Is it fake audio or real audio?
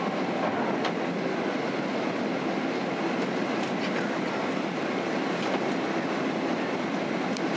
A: real